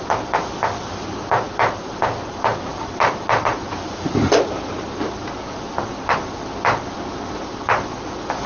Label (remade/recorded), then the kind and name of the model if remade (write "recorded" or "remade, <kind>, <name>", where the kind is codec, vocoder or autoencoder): recorded